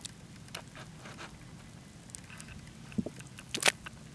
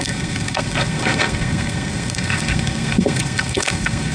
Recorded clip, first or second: first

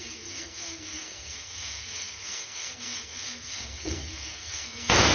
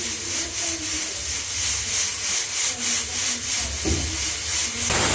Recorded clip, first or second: second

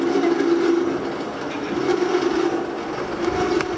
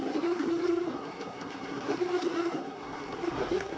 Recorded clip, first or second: first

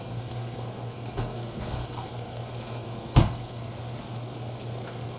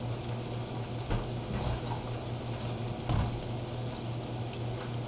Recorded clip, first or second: second